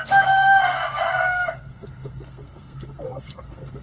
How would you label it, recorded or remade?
remade